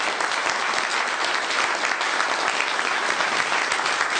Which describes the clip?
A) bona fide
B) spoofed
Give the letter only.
A